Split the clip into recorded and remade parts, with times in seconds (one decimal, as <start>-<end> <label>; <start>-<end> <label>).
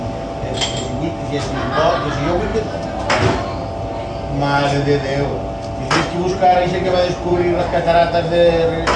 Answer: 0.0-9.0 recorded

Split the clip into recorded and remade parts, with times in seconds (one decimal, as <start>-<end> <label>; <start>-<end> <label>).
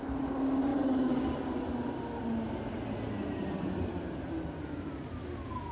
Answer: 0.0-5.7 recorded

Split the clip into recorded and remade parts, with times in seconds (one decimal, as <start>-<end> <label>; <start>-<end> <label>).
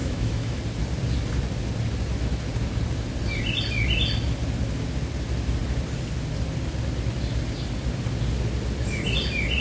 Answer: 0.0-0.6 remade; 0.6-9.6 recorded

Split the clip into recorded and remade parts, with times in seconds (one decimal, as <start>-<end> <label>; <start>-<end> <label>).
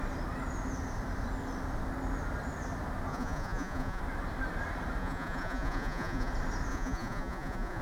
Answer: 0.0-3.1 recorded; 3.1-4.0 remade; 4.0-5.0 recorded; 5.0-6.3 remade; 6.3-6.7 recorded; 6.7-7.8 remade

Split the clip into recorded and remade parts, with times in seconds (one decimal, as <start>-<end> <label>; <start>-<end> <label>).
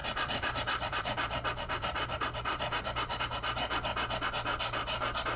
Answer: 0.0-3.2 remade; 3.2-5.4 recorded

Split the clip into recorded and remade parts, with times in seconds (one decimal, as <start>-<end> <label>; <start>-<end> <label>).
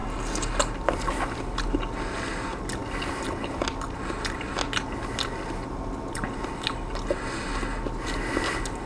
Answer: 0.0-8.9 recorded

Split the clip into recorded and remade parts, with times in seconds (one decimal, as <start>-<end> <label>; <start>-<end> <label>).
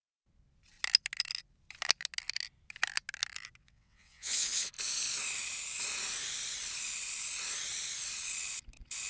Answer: 0.0-3.6 recorded; 3.6-4.7 remade; 4.7-9.1 recorded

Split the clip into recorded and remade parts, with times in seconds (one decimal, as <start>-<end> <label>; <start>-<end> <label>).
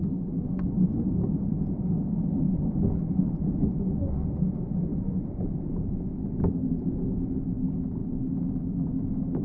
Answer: 0.0-1.5 recorded; 1.5-2.2 remade; 2.2-4.9 recorded; 4.9-6.5 remade; 6.5-8.0 recorded; 8.0-8.6 remade; 8.6-9.4 recorded